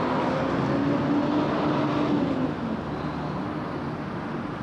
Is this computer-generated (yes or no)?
no